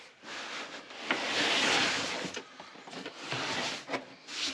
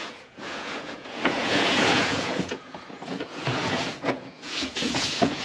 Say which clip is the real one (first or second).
first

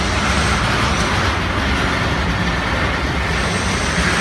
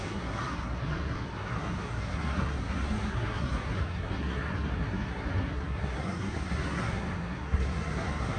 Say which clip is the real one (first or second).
first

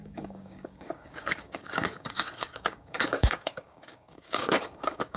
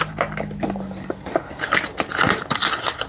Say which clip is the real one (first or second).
second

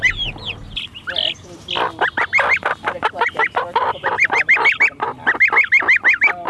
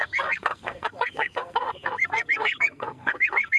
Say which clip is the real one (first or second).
first